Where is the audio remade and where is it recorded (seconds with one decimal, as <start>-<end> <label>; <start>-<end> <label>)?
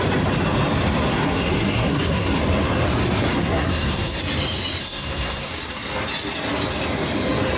0.0-1.1 recorded; 1.1-2.4 remade; 2.4-3.3 recorded; 3.3-4.2 remade; 4.2-4.8 recorded; 4.8-5.5 remade; 5.5-7.6 recorded